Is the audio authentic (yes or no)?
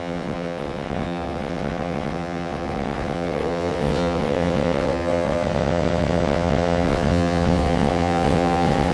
no